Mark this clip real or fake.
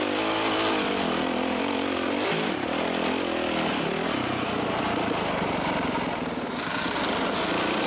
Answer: real